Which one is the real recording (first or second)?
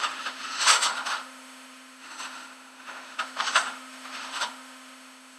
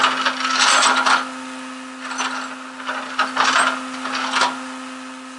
second